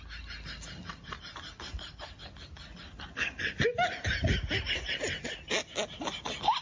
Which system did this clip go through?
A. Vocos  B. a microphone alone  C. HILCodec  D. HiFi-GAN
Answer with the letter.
B